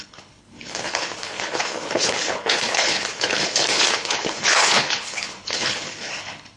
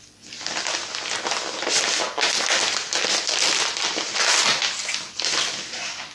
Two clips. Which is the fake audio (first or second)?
first